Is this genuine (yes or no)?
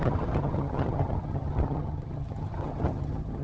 no